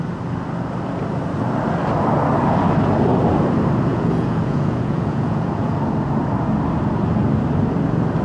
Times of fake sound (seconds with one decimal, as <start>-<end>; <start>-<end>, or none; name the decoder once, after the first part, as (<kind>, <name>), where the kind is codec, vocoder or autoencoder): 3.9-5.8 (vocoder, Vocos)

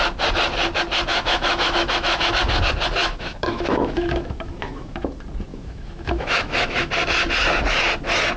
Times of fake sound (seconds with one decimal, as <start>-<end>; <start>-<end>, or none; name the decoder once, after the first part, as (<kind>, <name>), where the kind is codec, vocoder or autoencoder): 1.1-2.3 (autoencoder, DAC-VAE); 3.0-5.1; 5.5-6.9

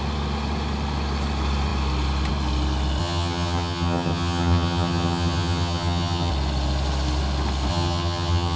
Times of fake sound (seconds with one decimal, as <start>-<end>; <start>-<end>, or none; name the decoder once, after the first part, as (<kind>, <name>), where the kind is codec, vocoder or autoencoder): 3.0-6.3 (vocoder, HiFi-GAN); 7.7-8.6